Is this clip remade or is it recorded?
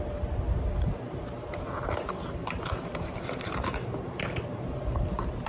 remade